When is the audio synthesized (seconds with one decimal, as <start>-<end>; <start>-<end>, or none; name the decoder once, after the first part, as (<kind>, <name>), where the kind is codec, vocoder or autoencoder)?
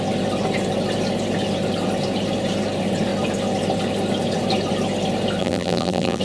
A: 5.4-6.2 (vocoder, BigVGAN v2)